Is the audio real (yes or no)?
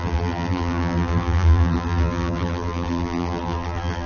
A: no